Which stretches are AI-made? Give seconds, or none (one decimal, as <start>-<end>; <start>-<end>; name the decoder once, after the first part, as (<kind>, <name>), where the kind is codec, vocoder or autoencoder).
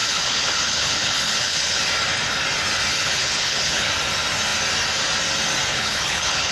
0.0-1.8 (codec, HILCodec); 2.9-3.9; 5.7-6.5